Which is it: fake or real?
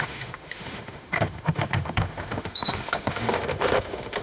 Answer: fake